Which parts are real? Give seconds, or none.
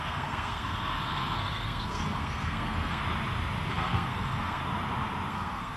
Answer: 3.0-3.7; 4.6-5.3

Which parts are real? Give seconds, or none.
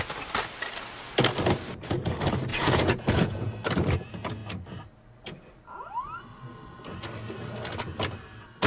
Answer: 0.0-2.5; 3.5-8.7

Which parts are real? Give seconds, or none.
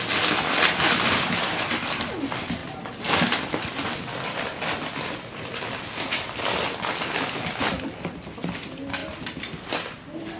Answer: 0.0-10.4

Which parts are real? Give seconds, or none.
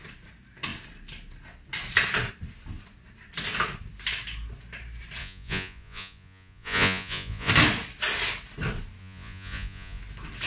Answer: 0.0-5.2; 7.5-9.0; 10.0-10.5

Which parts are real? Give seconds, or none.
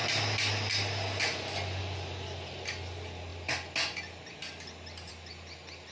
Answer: 0.0-5.9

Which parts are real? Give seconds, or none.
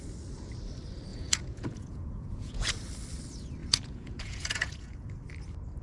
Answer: 0.0-1.1; 2.7-3.6; 5.1-5.8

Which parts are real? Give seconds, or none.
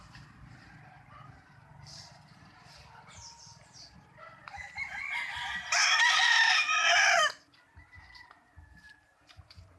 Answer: 0.0-1.7; 6.5-9.8